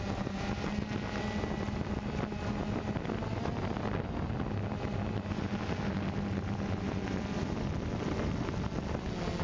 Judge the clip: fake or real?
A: real